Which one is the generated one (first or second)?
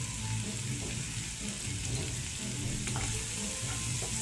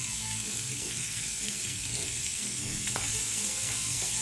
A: second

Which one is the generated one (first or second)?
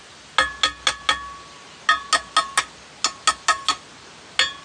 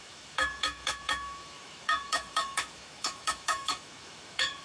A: second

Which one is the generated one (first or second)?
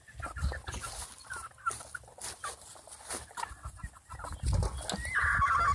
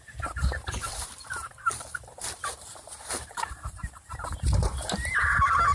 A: second